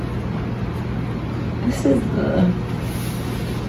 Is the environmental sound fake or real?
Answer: real